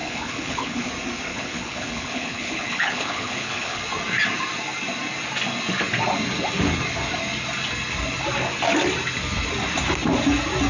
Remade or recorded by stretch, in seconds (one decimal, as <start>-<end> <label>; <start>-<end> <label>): 0.0-0.9 remade; 0.9-1.3 recorded; 1.3-3.8 remade; 3.8-10.7 recorded